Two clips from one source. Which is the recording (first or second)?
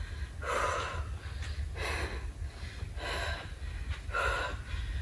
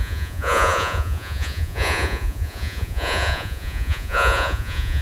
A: first